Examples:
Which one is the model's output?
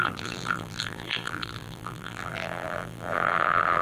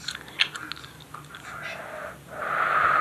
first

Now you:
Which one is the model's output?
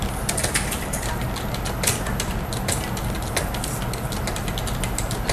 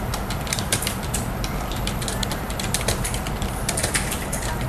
second